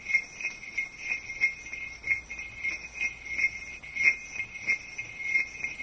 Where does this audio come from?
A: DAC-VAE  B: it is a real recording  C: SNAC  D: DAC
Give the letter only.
B